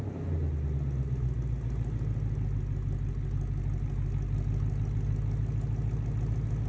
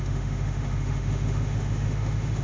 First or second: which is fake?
second